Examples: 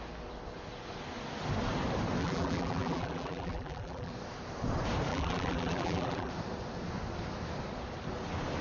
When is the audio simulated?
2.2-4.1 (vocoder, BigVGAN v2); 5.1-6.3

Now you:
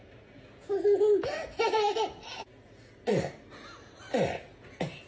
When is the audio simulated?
none